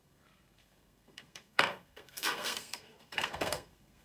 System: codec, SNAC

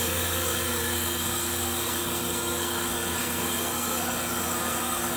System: codec, SNAC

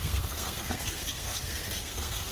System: codec, SNAC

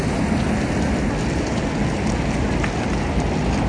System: none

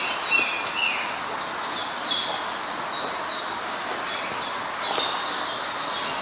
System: none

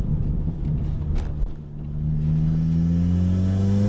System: none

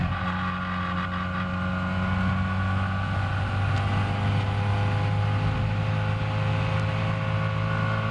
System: none